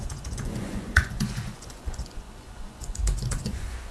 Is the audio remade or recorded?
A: remade